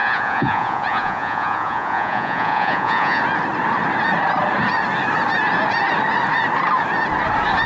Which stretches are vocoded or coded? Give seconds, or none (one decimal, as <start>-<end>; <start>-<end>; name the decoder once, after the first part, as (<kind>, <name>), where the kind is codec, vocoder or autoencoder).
0.0-3.2 (vocoder, Vocos)